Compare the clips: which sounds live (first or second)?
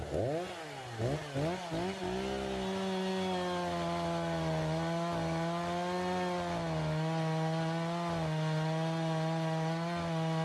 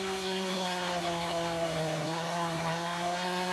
first